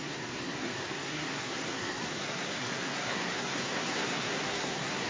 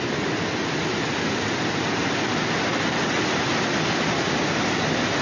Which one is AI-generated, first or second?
first